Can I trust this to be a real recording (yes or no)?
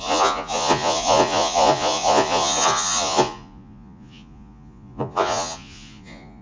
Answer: no